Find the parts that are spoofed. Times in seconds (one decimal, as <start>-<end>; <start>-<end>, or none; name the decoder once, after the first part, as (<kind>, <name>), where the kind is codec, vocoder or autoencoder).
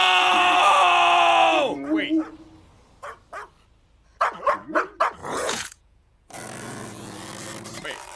5.2-6.3 (vocoder, Vocos)